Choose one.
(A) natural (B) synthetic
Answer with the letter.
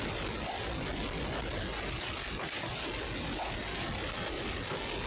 A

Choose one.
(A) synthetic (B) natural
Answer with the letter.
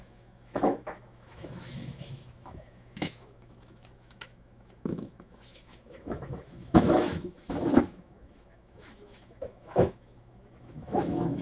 A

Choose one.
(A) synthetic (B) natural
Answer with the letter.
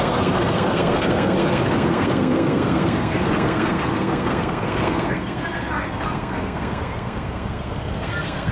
A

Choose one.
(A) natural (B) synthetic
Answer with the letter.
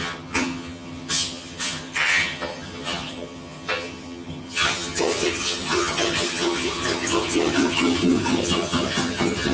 B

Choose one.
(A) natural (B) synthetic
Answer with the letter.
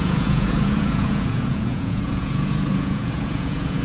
B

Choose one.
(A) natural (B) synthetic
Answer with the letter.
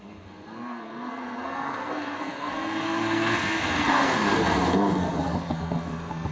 B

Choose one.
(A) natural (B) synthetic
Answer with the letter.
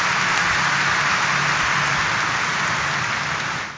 A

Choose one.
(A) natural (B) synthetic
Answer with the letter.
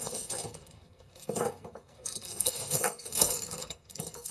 B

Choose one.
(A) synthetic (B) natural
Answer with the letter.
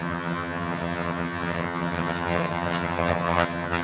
A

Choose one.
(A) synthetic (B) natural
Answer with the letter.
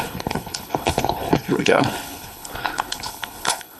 A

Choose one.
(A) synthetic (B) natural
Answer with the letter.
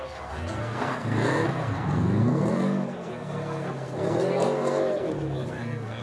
A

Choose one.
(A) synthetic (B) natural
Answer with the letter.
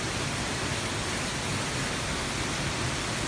B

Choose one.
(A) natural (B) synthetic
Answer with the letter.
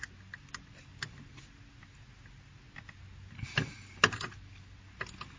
A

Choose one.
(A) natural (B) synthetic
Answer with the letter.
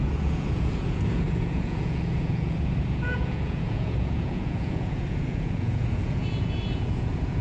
B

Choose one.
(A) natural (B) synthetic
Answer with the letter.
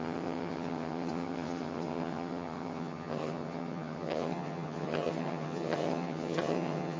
B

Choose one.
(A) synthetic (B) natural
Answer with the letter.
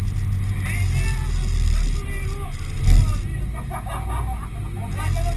B